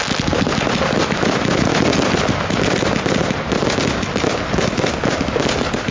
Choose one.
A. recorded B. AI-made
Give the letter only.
A